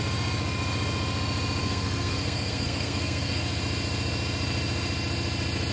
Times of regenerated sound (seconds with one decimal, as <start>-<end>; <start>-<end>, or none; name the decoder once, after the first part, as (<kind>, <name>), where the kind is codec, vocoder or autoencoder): 1.6-3.6 (codec, SNAC)